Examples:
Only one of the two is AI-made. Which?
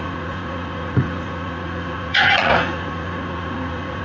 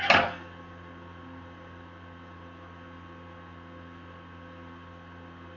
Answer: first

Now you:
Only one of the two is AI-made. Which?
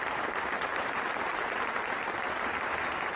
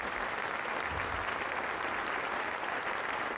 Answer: first